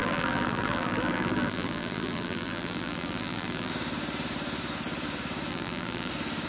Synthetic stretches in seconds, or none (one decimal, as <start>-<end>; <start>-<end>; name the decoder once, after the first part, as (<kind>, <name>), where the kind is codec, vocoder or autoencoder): 0.0-3.7 (vocoder, BigVGAN v2); 5.5-6.1